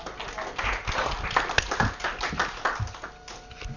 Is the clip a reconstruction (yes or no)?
no